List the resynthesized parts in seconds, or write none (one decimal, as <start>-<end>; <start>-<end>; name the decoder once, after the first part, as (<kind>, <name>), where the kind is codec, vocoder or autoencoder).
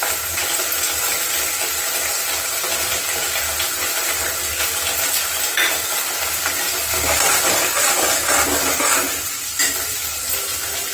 none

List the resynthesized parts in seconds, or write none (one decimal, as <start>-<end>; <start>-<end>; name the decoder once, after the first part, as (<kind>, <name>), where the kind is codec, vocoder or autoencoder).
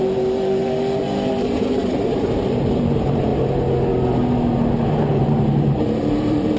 0.0-3.3 (vocoder, BigVGAN v2); 4.9-6.6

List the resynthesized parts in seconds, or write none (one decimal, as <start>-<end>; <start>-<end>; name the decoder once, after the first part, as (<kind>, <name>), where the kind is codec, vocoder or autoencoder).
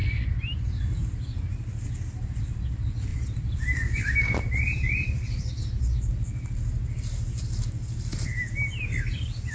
3.1-5.5 (vocoder, BigVGAN v2)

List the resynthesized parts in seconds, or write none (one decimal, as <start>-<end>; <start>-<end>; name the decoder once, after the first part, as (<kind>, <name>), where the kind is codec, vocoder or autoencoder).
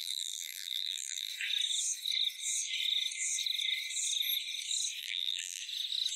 0.0-1.3 (vocoder, BigVGAN v2); 5.0-5.6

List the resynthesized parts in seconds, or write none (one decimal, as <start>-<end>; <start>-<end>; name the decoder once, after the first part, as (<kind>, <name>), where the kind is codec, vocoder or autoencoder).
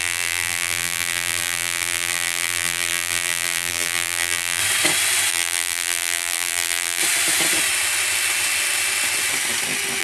0.0-4.6 (vocoder, BigVGAN v2); 5.3-7.0